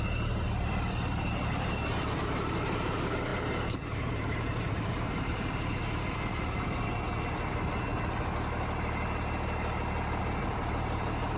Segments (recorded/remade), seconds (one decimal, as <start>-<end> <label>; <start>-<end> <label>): 0.0-6.3 remade; 6.3-10.2 recorded; 10.2-11.4 remade